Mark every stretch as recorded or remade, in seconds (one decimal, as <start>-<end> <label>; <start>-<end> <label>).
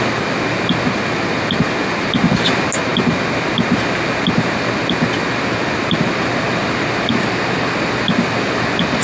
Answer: 0.0-9.0 recorded